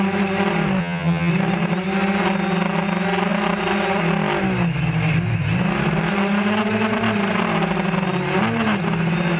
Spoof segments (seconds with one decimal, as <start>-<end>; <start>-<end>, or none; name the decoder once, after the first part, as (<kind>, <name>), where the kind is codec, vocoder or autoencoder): 0.8-1.3 (vocoder, HiFi-GAN)